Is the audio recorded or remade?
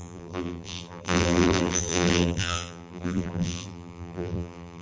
remade